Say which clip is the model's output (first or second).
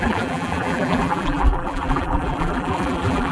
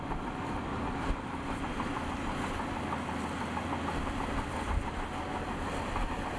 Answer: first